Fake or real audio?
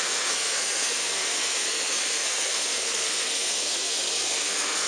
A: fake